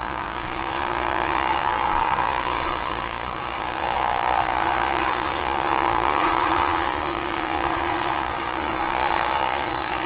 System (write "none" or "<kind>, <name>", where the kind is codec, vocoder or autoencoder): vocoder, Vocos